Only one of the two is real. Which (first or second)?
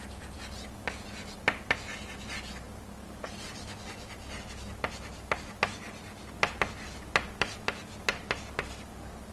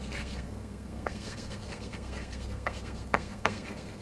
first